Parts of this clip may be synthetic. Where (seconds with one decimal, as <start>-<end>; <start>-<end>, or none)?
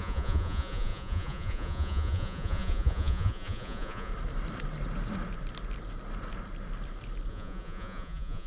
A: 0.0-4.1; 7.3-8.5